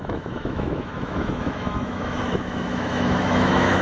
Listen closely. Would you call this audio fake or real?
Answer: fake